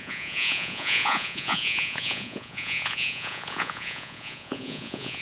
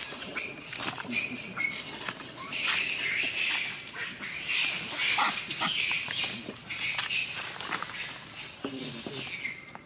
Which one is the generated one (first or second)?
first